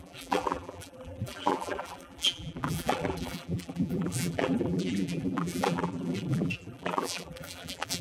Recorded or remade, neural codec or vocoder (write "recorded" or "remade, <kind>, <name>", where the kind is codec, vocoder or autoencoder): remade, vocoder, BigVGAN v2